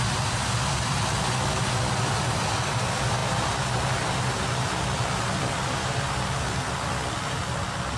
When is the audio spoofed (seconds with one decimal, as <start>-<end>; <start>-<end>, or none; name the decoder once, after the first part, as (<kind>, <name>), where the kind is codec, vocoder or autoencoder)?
none